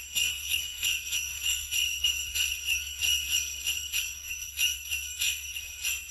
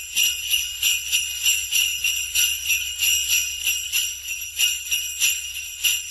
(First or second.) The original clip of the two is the second